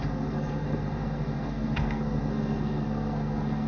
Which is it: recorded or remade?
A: remade